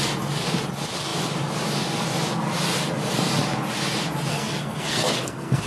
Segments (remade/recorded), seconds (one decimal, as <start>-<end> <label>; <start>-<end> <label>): 0.0-4.3 recorded; 4.3-5.7 remade